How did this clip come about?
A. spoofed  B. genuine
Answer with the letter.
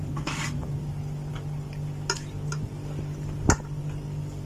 B